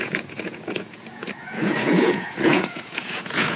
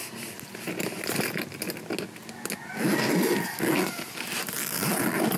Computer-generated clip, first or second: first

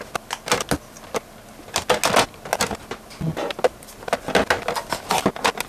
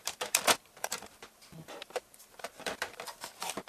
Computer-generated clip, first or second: second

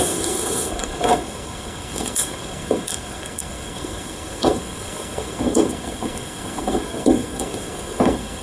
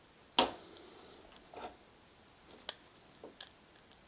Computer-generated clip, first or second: first